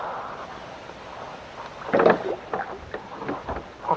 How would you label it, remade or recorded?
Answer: recorded